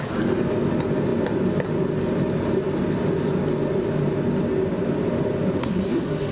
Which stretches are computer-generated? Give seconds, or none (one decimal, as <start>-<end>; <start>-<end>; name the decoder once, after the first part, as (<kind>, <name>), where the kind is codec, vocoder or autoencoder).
5.6-6.3 (codec, SNAC)